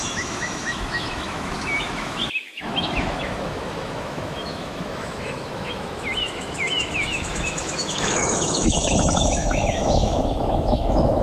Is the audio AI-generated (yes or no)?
yes